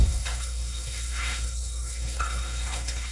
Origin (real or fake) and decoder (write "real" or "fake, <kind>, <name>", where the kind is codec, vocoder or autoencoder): fake, codec, SNAC